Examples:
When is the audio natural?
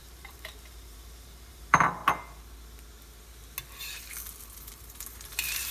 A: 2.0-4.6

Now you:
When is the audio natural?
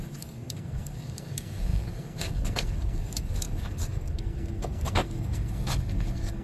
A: none